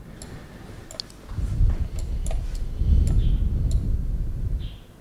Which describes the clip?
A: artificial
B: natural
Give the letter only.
B